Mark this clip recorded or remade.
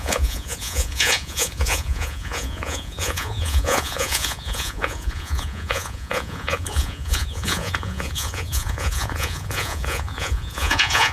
remade